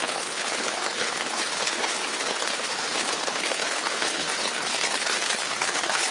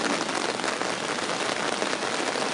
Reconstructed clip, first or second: first